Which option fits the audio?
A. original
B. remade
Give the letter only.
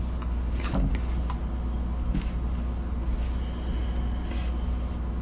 A